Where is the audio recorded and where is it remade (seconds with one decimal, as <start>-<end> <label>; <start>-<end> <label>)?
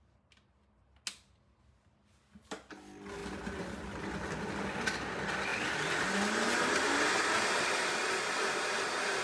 0.0-9.2 recorded